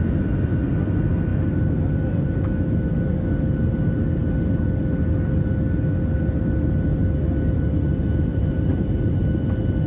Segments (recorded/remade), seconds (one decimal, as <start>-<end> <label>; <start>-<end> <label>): 0.0-8.3 recorded; 8.3-9.3 remade; 9.3-9.9 recorded